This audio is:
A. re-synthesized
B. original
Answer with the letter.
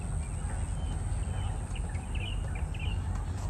B